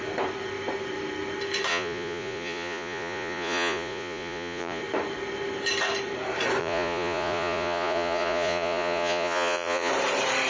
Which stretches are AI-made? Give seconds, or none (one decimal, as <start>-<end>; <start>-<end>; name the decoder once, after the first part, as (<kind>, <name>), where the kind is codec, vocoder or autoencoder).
1.7-4.8 (vocoder, Vocos); 6.6-9.9